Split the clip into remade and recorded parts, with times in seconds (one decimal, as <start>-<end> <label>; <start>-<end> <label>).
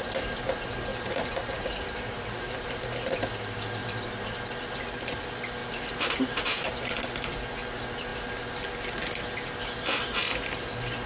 0.0-0.9 recorded; 0.9-3.2 remade; 3.2-3.8 recorded; 3.8-4.3 remade; 4.3-5.6 recorded; 5.6-7.0 remade; 7.0-11.1 recorded